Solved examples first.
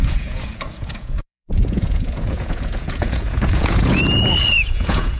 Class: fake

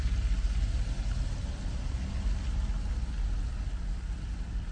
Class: real